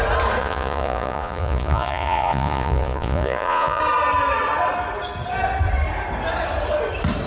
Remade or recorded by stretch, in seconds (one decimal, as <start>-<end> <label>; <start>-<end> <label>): 0.0-0.4 recorded; 0.4-3.8 remade; 3.8-7.3 recorded